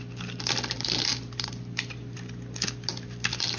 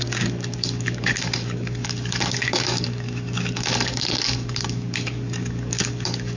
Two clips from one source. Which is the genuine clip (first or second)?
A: first